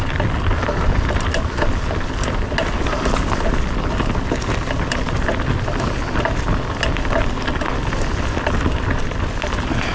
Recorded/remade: recorded